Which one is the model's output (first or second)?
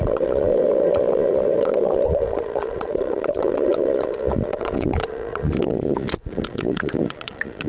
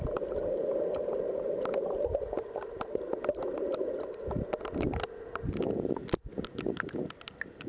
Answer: first